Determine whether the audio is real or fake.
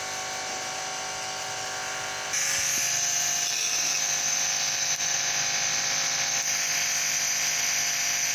real